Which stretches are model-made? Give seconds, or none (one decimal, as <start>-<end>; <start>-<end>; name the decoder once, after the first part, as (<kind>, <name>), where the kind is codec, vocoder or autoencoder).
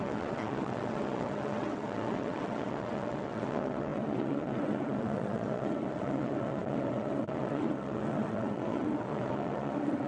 0.0-10.1 (vocoder, WaveNeXt)